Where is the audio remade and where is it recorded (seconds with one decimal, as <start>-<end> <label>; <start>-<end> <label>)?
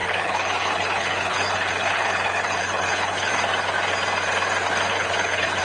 0.0-3.3 remade; 3.3-4.9 recorded; 4.9-5.6 remade